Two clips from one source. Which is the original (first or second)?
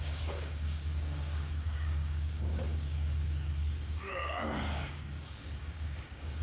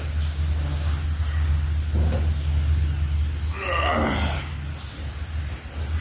second